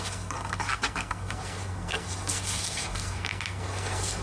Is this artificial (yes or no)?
yes